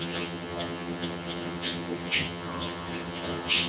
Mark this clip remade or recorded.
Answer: remade